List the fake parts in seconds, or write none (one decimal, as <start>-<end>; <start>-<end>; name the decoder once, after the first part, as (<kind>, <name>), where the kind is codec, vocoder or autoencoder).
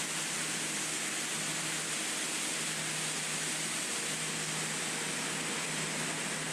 none